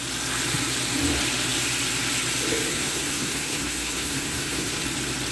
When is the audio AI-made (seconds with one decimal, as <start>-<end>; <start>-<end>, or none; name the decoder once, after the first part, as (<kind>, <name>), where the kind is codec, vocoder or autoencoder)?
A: 2.7-4.8 (codec, SNAC)